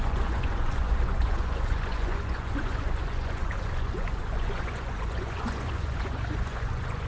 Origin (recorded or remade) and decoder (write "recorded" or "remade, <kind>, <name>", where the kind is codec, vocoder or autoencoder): remade, vocoder, Vocos